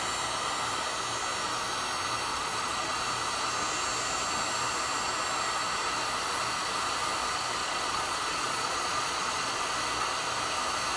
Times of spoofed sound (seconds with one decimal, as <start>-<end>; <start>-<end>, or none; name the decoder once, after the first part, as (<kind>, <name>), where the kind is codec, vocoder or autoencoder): 2.3-3.0 (vocoder, Vocos); 7.6-9.6